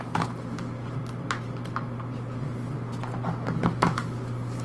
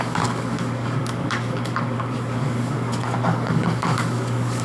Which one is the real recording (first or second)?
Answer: first